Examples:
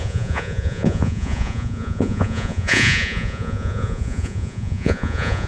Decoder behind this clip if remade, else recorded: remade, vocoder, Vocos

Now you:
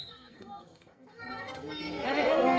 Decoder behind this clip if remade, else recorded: remade, codec, SNAC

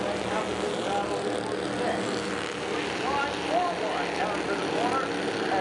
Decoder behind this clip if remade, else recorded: recorded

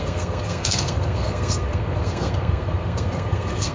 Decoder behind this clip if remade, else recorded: remade, codec, SNAC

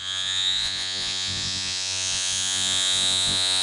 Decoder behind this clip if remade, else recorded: remade, vocoder, Vocos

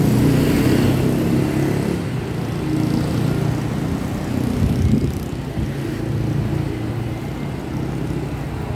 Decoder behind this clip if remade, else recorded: recorded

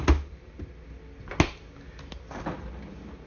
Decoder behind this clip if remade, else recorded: recorded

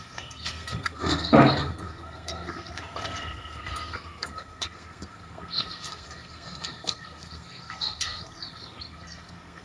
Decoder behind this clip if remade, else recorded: remade, codec, SNAC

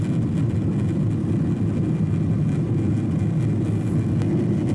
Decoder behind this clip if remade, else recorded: recorded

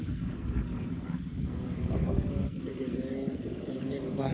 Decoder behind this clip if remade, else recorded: remade, codec, SNAC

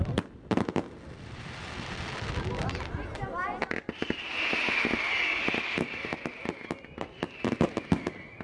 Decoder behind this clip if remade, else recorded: recorded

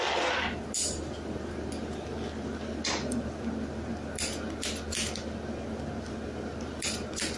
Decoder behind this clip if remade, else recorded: recorded